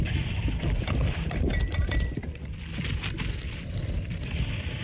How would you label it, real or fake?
fake